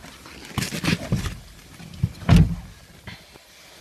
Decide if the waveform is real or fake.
real